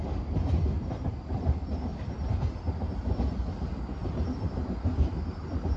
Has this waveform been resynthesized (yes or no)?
no